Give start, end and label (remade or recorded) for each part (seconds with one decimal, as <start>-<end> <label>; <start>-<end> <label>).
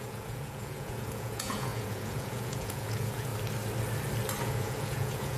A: 0.0-3.3 remade; 3.3-4.4 recorded; 4.4-5.4 remade